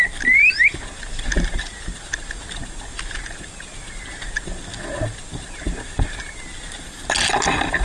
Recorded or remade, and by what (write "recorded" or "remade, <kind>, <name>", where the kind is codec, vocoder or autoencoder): recorded